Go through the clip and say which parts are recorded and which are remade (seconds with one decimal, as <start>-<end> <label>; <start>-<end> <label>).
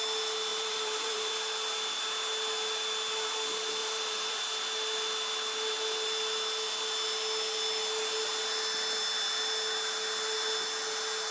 0.0-0.5 recorded; 0.5-1.3 remade; 1.3-3.8 recorded; 3.8-4.4 remade; 4.4-11.3 recorded